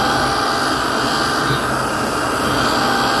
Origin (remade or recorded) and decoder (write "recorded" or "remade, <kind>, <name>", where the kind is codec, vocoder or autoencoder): recorded